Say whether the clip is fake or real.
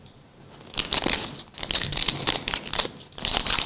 real